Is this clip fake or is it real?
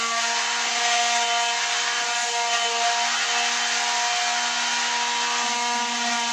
real